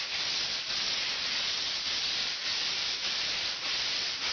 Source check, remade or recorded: remade